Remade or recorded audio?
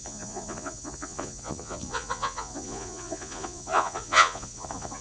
remade